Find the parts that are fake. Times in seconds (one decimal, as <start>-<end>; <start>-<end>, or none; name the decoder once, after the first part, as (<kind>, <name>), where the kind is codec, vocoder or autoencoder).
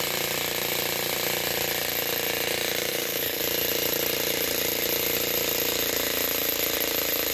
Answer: 2.9-3.4 (codec, DAC)